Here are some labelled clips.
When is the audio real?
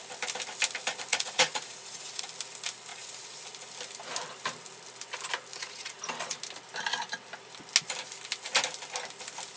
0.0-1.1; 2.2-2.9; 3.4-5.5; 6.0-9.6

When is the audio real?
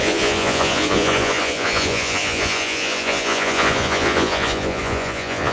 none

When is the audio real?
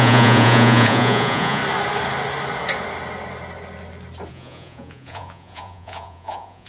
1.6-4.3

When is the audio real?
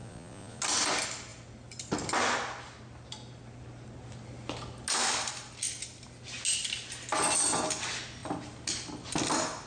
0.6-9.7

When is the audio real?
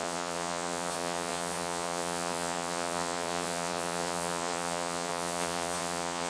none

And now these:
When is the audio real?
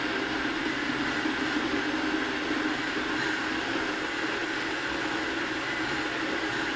0.0-6.8